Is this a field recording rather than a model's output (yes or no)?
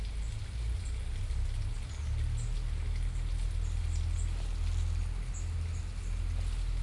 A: yes